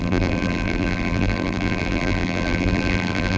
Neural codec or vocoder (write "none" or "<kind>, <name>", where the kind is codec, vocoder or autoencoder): vocoder, BigVGAN v2